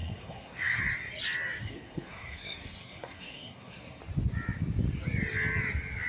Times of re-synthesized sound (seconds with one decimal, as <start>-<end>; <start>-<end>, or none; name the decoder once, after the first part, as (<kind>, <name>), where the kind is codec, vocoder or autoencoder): 0.0-0.8 (codec, SNAC); 1.6-4.0